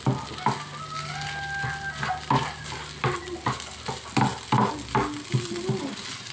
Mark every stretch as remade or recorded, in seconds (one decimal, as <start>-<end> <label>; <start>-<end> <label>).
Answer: 0.0-6.3 recorded